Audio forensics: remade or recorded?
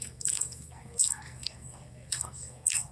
remade